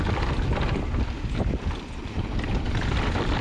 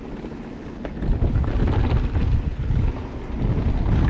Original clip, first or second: second